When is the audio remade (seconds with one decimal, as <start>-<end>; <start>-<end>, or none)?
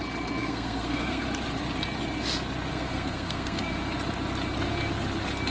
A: 0.4-1.2; 2.7-3.7